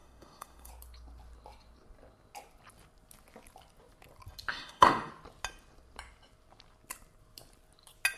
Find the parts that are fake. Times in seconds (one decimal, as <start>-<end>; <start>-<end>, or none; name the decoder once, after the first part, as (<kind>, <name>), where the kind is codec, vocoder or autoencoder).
0.0-0.7 (autoencoder, DAC-VAE); 4.5-5.1